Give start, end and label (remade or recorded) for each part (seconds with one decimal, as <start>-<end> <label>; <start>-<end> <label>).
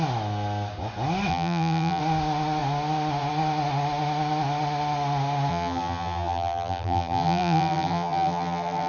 0.0-1.3 recorded; 1.3-2.0 remade; 2.0-5.5 recorded; 5.5-8.9 remade